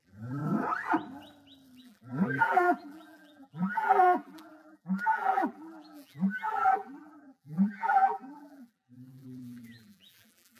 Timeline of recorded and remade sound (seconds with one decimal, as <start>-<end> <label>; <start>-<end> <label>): 0.0-0.4 remade; 0.4-1.8 recorded; 1.8-10.6 remade